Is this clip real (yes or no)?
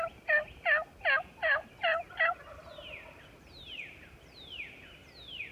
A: yes